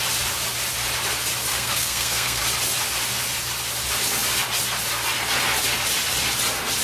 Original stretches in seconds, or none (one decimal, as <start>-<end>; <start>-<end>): 0.0-1.5; 2.4-6.8